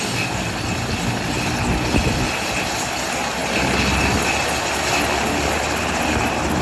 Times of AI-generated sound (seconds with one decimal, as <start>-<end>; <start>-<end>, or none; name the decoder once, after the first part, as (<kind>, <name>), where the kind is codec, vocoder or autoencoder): none